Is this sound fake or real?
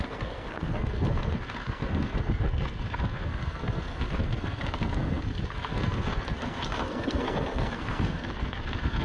fake